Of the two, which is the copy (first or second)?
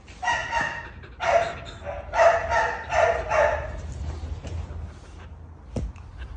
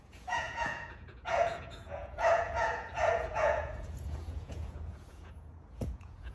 second